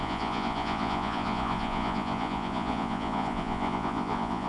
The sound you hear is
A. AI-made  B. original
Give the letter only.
A